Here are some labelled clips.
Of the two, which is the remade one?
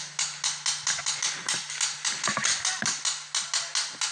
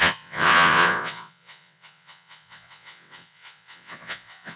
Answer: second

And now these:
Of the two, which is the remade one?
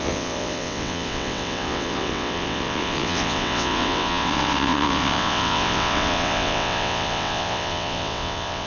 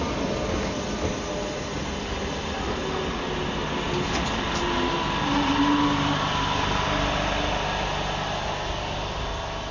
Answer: first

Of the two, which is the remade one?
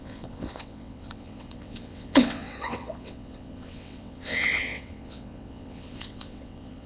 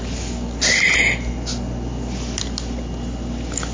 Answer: first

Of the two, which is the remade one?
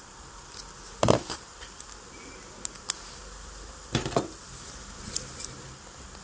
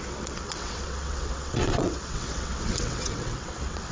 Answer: second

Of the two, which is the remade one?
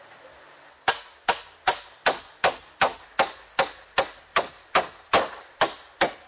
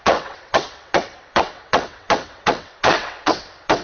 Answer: second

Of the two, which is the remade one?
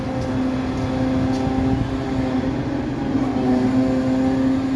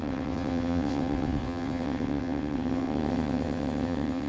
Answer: second